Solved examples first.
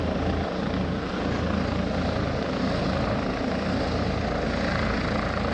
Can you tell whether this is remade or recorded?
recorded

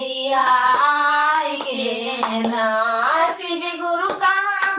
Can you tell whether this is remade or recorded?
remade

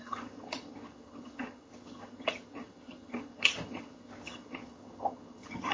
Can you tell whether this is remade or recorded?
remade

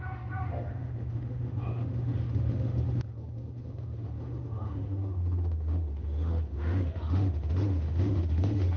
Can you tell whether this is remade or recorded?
remade